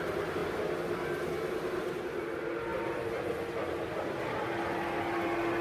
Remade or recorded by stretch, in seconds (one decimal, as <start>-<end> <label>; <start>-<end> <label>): 0.0-5.6 recorded